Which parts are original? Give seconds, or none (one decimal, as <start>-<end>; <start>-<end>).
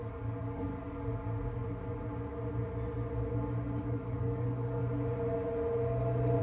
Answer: 0.7-3.8; 4.8-6.4